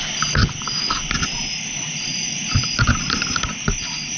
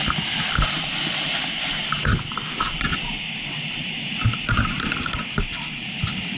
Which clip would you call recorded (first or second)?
second